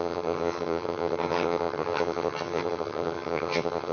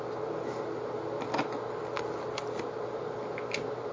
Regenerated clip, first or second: first